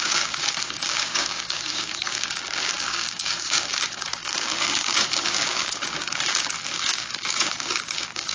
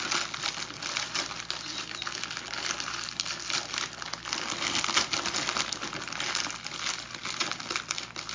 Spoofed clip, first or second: first